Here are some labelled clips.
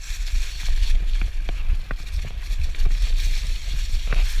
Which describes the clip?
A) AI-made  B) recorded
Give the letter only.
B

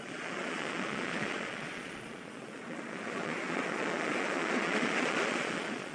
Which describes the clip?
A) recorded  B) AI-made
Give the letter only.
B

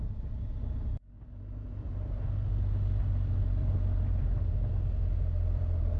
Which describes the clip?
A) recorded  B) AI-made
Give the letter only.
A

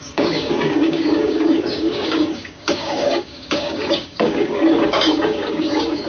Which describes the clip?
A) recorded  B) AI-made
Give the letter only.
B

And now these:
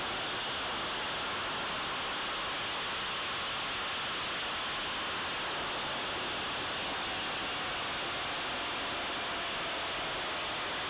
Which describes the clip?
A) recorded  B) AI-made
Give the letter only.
A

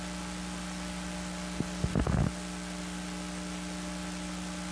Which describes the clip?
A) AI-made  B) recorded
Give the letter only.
B